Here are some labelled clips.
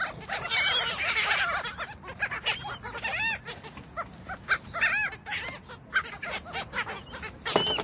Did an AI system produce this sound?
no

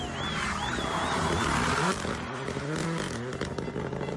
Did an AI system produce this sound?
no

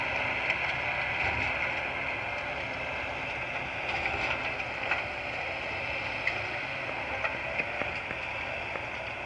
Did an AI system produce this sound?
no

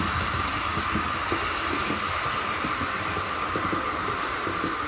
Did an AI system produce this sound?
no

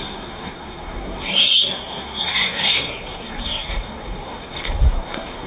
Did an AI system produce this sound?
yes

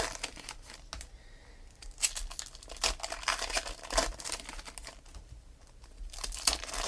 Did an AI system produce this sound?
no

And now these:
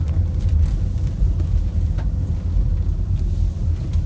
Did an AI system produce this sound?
no